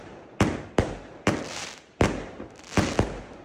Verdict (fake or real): real